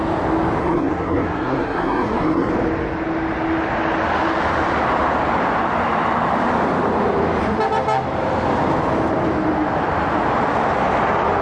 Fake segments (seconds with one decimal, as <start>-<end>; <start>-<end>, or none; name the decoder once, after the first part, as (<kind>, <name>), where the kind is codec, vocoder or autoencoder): 0.6-2.5 (codec, SNAC)